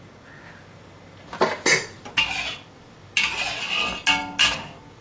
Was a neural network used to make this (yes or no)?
no